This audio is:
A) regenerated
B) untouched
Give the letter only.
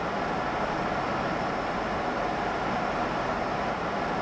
B